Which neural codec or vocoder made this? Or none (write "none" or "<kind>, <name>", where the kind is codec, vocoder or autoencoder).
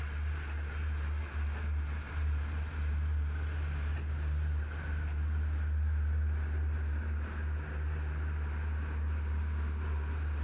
none